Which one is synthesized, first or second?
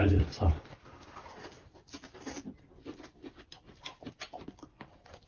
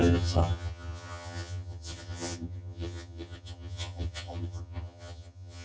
second